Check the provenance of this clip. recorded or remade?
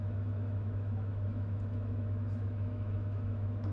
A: remade